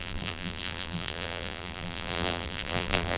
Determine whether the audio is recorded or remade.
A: remade